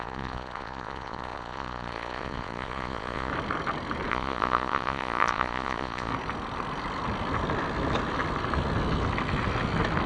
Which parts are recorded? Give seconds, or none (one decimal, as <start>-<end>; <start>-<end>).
3.3-4.1; 6.1-10.1